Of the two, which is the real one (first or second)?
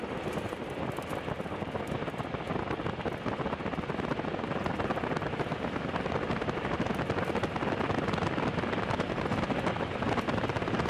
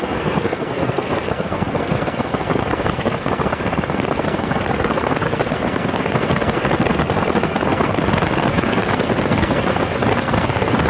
first